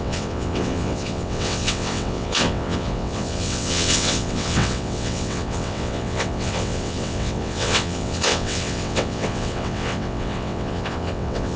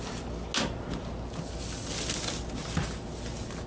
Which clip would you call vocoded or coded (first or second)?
first